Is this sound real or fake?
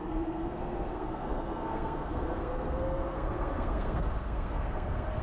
fake